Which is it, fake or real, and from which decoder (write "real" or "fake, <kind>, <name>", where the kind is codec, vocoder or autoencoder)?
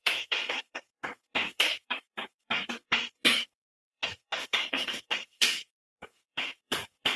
fake, codec, SNAC